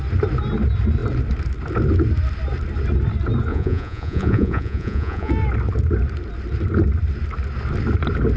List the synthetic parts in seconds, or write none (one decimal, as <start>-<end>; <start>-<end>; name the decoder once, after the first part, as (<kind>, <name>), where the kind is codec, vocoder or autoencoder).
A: 3.5-5.3 (vocoder, Vocos)